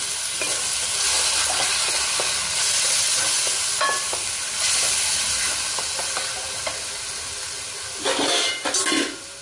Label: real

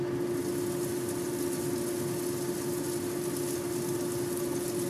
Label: real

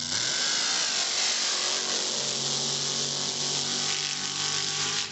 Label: real